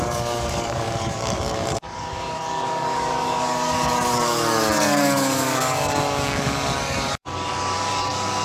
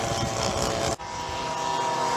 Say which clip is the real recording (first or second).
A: second